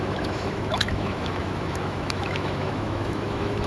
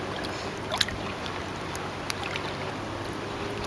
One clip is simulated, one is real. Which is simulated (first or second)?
first